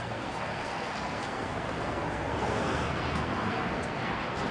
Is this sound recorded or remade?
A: remade